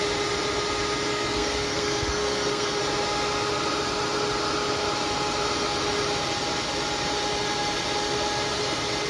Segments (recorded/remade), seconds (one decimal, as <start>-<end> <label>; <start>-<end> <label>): 0.0-1.1 recorded; 1.1-2.8 remade; 2.8-9.1 recorded

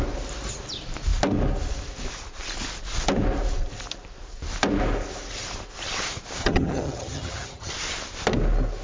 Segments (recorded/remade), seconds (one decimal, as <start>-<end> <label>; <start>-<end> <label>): 0.0-6.4 recorded; 6.4-7.7 remade; 7.7-8.8 recorded

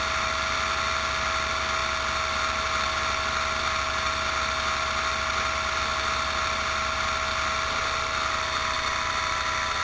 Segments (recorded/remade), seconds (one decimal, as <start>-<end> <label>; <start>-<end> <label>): 0.0-9.8 recorded

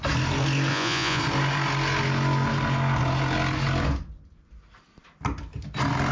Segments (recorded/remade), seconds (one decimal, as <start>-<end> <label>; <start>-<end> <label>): 0.0-0.7 recorded; 0.7-1.2 remade; 1.2-6.1 recorded

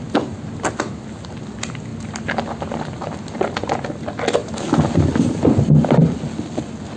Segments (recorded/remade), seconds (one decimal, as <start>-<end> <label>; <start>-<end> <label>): 0.0-7.0 recorded

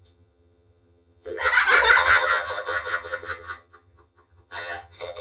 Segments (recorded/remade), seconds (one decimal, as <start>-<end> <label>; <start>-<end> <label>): 0.0-1.5 remade; 1.5-2.0 recorded; 2.0-5.2 remade

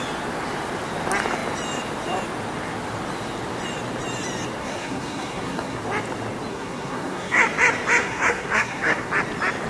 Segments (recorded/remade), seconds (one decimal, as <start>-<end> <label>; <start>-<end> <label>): 0.0-4.6 recorded; 4.6-5.8 remade; 5.8-6.5 recorded; 6.5-7.4 remade; 7.4-8.0 recorded; 8.0-9.1 remade; 9.1-9.7 recorded